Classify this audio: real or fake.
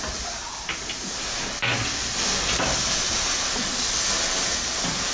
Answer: real